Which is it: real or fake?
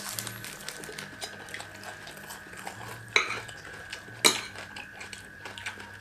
real